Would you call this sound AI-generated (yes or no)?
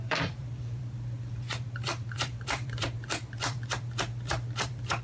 yes